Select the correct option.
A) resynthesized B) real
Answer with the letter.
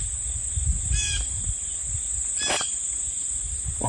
B